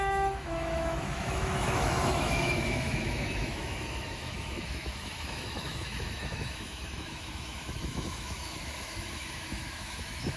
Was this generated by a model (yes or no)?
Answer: yes